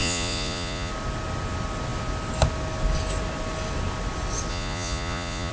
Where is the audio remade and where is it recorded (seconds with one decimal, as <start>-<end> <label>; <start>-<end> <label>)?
0.0-0.9 remade; 0.9-4.5 recorded; 4.5-5.5 remade